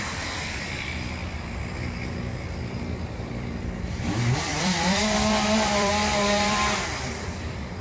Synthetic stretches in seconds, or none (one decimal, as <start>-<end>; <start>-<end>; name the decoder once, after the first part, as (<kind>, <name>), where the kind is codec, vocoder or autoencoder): 0.0-7.8 (vocoder, BigVGAN v2)